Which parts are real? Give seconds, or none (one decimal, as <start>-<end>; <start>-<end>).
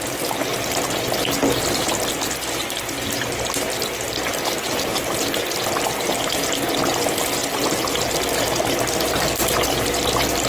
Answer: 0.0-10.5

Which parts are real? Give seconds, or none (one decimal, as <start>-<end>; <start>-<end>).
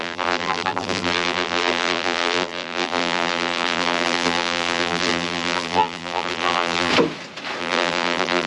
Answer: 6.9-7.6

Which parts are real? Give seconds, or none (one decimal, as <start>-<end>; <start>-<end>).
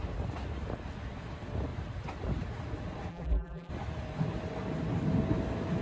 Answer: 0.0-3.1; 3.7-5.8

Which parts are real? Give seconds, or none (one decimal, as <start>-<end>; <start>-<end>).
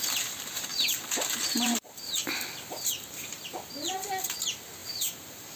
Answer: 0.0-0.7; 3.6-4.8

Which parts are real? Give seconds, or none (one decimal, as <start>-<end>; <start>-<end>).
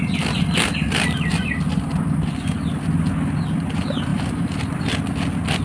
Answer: 0.0-4.1; 4.8-5.6